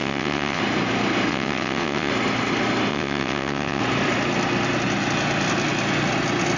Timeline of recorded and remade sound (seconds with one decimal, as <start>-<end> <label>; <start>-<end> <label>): 0.0-0.6 remade; 0.6-1.3 recorded; 1.3-2.1 remade; 2.1-2.9 recorded; 2.9-3.8 remade; 3.8-6.6 recorded